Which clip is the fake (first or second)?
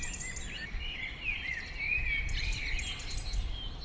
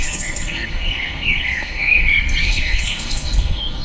second